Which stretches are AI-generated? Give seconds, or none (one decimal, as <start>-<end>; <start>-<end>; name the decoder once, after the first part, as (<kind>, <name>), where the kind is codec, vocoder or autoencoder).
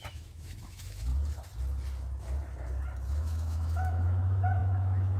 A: 0.0-1.1 (autoencoder, DAC-VAE); 3.1-5.2